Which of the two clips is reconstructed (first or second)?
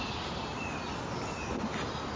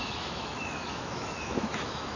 second